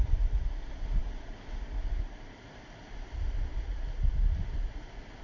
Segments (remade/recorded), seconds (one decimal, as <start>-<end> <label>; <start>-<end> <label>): 0.0-5.2 recorded